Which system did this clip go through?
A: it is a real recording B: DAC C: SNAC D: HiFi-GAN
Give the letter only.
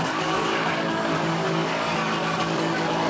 B